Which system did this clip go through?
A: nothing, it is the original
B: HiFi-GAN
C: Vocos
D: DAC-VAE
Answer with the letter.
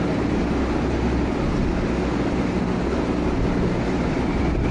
A